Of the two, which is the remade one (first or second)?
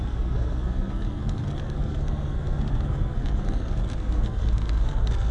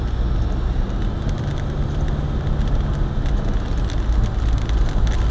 first